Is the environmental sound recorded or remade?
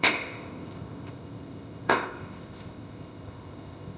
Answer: remade